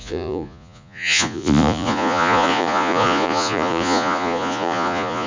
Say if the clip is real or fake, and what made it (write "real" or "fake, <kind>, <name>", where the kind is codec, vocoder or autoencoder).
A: fake, vocoder, Vocos